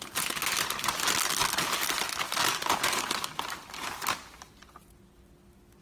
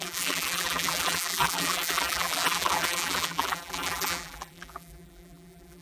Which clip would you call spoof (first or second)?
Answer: second